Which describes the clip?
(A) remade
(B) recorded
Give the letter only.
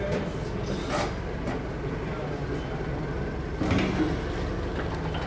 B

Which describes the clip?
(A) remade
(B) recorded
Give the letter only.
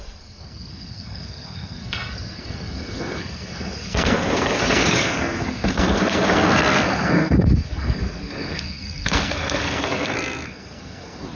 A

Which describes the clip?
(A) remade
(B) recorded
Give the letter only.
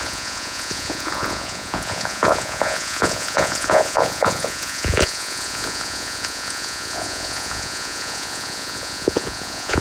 A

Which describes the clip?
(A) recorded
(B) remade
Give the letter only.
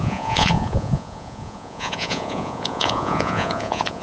B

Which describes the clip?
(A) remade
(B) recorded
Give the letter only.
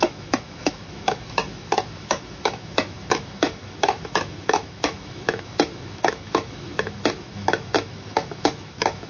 A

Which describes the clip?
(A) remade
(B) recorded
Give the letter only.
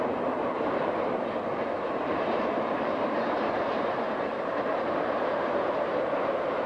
A